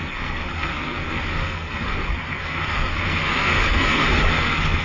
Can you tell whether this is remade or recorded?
remade